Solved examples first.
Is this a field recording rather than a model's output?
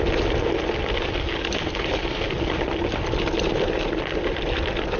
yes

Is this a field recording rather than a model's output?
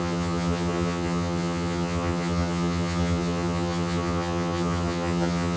no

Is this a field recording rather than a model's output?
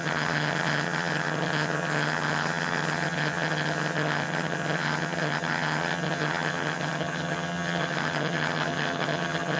no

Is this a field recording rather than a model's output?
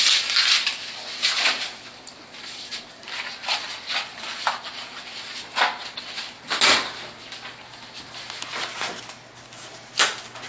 yes